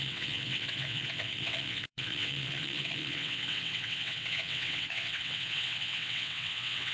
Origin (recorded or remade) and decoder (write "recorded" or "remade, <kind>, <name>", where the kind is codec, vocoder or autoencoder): remade, vocoder, WaveNeXt